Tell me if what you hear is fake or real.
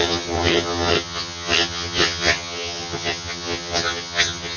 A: fake